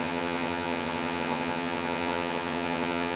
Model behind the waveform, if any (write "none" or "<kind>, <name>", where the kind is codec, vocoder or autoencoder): vocoder, HiFi-GAN